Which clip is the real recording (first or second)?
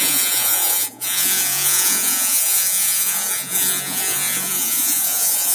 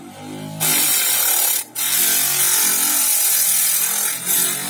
second